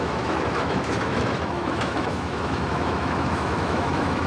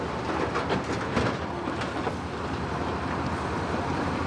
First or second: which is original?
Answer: second